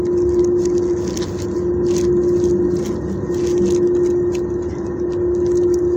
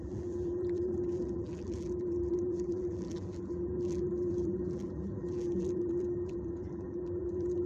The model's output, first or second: second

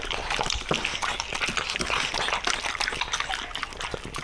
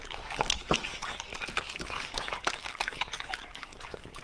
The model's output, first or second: second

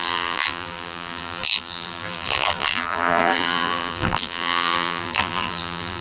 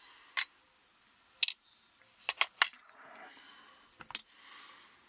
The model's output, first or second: first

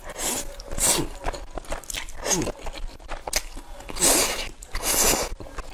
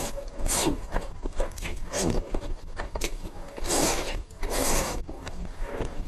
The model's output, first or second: second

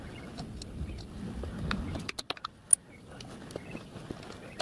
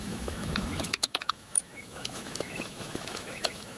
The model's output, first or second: second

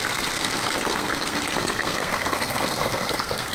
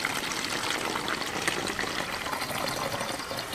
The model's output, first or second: first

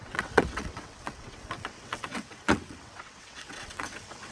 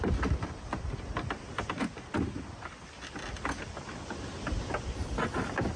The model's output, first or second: first